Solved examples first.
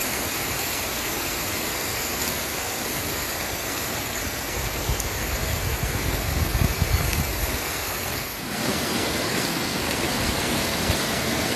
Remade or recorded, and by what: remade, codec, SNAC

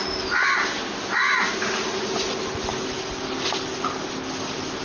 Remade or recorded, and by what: recorded